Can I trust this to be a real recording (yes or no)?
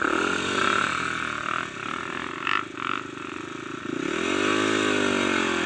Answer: yes